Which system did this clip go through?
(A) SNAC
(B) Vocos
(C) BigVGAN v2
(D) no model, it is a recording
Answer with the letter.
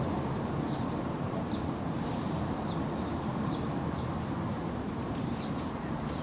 C